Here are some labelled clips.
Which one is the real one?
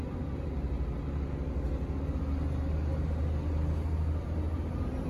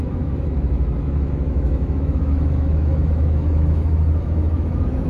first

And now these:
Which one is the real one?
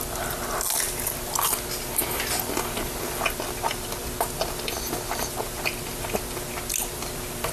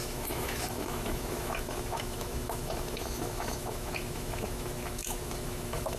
first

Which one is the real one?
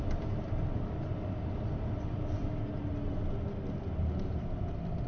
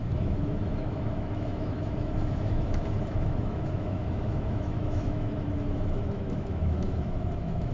first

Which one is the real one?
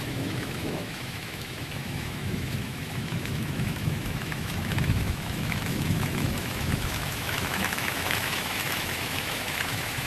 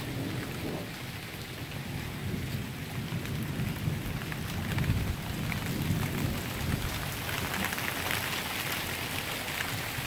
second